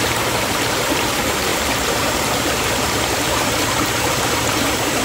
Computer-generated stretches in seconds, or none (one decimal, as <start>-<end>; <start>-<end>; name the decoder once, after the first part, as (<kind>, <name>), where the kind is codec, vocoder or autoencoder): 0.0-5.0 (vocoder, BigVGAN v2)